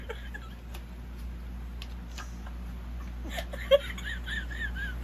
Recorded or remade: recorded